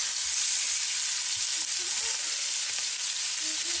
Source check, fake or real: real